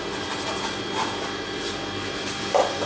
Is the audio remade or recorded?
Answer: recorded